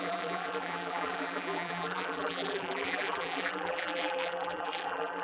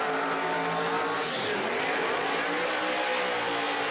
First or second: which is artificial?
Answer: first